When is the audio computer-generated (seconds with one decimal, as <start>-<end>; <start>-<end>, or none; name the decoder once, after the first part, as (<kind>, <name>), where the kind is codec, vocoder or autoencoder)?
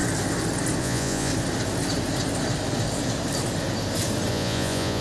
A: 0.8-1.3 (vocoder, Vocos); 4.3-5.0